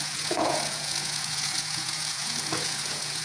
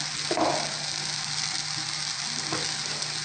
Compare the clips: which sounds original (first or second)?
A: second